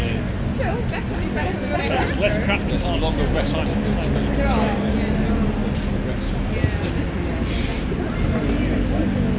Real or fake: real